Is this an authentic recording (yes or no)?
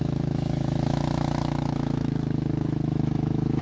no